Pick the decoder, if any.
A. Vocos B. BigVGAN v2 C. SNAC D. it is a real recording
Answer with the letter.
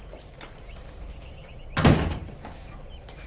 D